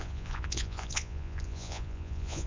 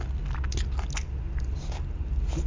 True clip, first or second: second